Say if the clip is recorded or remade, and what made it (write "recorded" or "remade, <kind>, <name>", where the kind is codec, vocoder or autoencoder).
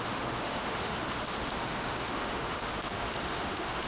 remade, autoencoder, DAC-VAE